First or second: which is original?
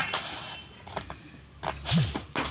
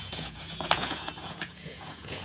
first